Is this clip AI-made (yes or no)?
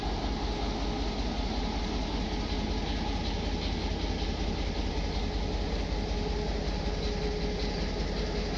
no